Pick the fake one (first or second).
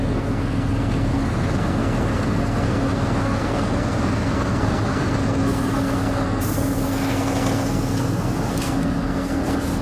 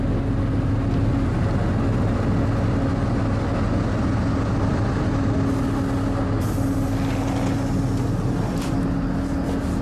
first